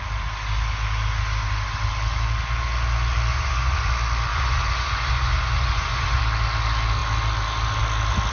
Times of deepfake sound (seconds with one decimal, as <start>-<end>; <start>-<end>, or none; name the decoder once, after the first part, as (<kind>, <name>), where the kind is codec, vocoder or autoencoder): 3.3-3.9 (vocoder, Vocos); 4.3-6.2